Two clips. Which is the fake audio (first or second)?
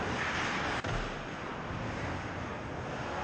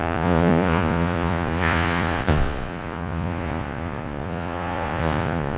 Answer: second